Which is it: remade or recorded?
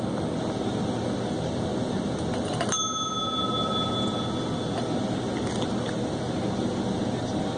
recorded